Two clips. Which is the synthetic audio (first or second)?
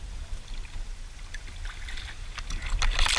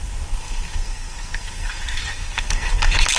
second